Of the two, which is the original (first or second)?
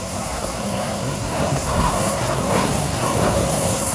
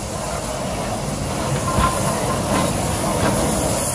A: second